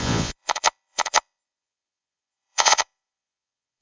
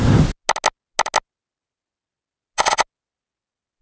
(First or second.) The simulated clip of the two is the first